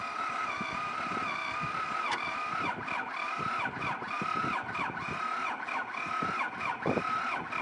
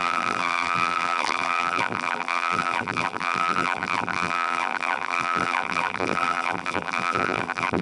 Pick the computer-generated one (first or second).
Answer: second